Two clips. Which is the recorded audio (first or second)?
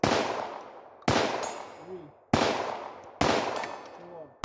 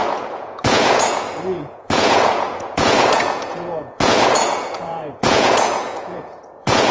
first